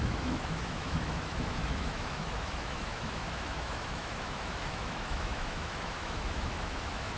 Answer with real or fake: fake